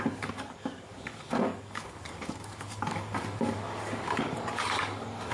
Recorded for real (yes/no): no